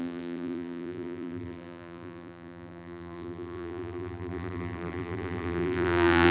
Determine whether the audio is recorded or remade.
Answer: remade